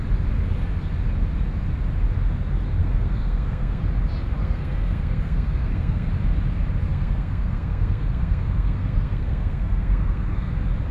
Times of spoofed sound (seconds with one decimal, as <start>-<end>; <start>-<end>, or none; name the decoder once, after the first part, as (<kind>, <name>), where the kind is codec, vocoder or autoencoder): 2.8-3.8 (codec, SNAC); 4.4-6.1; 6.9-10.5